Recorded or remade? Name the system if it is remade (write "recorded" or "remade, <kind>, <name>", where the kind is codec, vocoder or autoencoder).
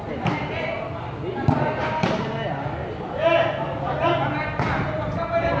recorded